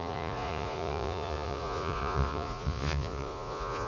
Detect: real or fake fake